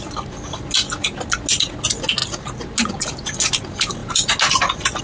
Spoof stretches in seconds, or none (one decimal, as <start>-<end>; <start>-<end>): none